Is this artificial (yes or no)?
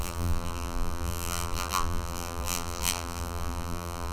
yes